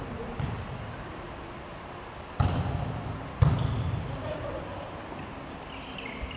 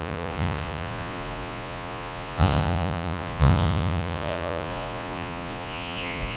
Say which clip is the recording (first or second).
first